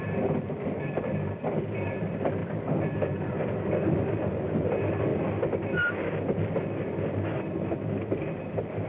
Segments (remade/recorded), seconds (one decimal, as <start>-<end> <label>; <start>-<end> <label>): 0.0-8.9 recorded